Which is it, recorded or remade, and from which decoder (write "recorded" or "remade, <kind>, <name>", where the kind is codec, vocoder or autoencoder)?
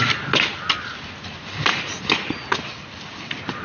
recorded